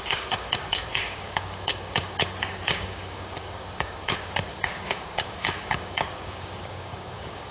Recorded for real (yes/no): no